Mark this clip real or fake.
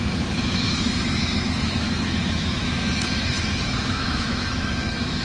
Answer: fake